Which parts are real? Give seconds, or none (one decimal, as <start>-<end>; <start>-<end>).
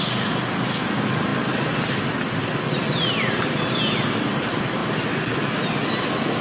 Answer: 0.0-6.4